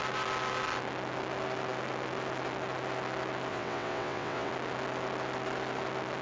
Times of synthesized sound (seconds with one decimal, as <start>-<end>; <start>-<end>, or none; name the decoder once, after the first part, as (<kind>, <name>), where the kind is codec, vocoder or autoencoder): 3.5-4.5 (vocoder, WaveNeXt)